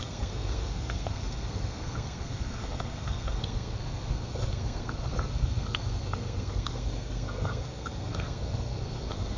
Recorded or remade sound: remade